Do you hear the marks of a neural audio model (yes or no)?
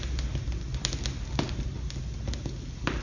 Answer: no